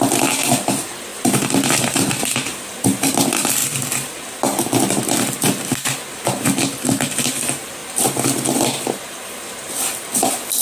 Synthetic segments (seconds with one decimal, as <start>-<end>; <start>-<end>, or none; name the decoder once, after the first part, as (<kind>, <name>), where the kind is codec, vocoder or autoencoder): none

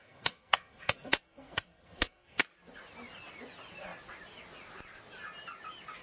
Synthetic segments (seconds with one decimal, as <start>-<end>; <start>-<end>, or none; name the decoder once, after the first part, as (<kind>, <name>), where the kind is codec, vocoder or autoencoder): 0.0-2.4 (codec, SNAC)

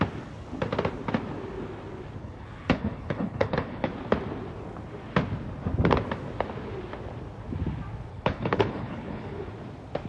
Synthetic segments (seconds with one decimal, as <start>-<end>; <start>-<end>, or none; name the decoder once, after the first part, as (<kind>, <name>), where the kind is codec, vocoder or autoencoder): 2.2-3.9 (codec, HILCodec); 8.1-9.4

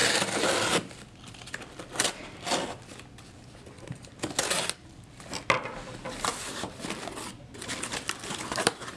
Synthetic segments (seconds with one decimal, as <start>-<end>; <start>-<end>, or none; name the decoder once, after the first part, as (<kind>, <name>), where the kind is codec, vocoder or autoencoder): 7.3-9.0 (vocoder, BigVGAN v2)

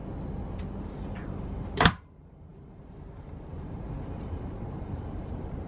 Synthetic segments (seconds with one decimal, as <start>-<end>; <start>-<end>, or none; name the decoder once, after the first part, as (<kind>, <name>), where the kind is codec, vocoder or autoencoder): 0.8-5.7 (vocoder, BigVGAN v2)